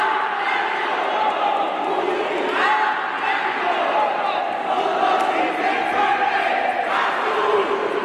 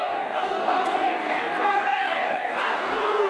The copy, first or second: second